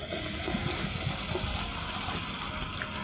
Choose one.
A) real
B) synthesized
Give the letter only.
A